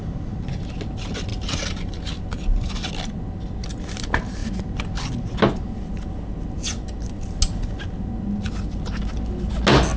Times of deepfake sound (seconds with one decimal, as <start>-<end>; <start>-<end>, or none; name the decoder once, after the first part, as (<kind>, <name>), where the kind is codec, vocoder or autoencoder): 1.3-2.9 (vocoder, BigVGAN v2)